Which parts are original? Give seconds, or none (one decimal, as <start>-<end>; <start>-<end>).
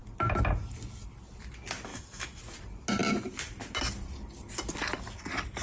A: 0.0-1.9; 2.4-5.6